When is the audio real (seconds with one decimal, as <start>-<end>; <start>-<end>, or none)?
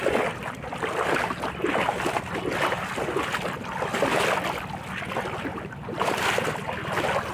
0.0-5.5; 6.2-7.3